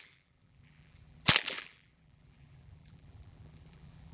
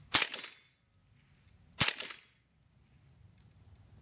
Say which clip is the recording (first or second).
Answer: second